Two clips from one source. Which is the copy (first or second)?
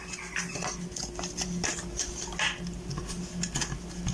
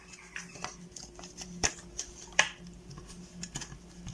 second